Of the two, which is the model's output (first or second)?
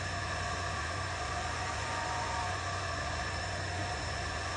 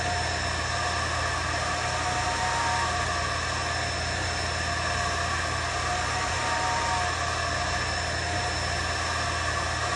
first